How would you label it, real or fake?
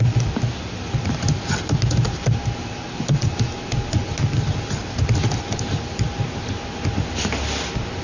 real